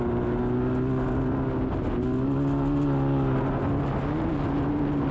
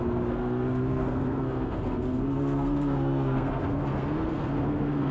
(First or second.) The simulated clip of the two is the second